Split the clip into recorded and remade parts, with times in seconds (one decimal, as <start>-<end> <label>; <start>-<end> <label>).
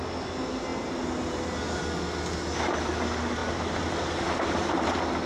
0.0-3.4 recorded; 3.4-4.7 remade; 4.7-5.3 recorded